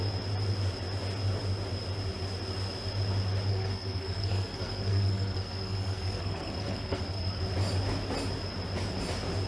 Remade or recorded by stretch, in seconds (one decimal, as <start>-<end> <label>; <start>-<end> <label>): 0.0-3.5 recorded; 3.5-7.4 remade; 7.4-9.5 recorded